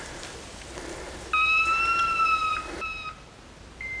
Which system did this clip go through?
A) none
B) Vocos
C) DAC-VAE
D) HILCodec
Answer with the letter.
A